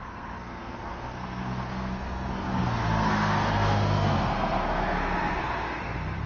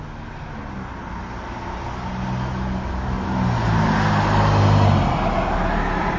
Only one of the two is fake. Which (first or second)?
first